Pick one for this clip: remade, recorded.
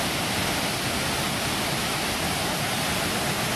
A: recorded